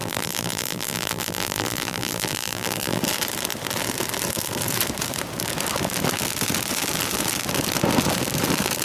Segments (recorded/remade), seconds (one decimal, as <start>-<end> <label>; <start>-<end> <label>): 0.0-3.0 remade; 3.0-8.8 recorded